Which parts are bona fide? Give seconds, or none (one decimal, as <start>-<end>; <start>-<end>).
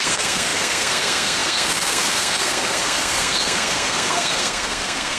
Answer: none